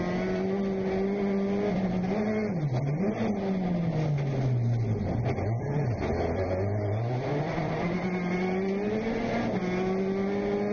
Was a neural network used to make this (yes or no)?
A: no